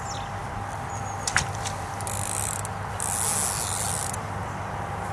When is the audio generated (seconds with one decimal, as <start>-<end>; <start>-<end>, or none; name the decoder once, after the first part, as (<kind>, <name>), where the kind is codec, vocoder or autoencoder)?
none